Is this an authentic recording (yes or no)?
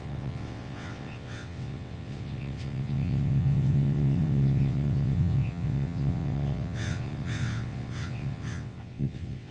no